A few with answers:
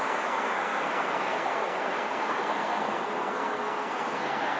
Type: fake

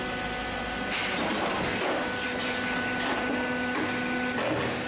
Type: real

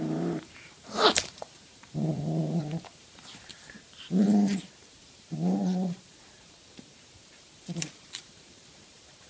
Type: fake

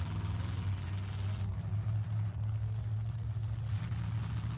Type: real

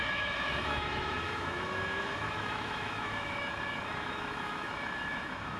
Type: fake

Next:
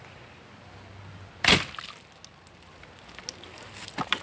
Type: real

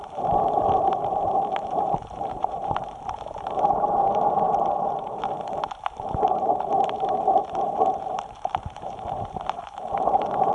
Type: fake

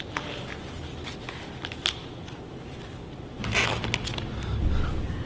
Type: real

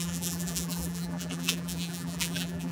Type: fake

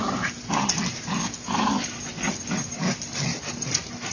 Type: real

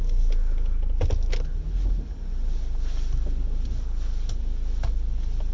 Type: real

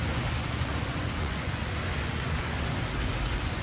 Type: fake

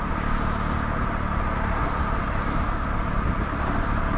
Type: real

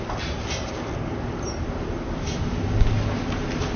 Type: real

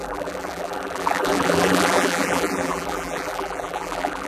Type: fake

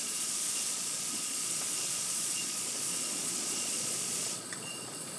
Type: fake